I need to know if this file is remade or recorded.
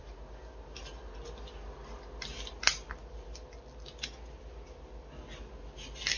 recorded